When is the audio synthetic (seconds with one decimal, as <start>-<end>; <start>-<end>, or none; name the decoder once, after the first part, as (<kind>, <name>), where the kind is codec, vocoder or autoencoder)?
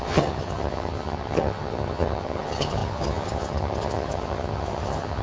0.0-5.2 (vocoder, HiFi-GAN)